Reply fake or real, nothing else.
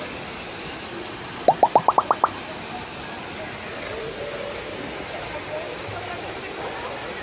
real